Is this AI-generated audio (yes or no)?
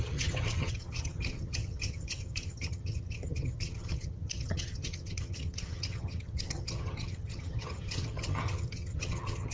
yes